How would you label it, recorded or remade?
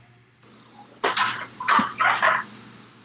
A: recorded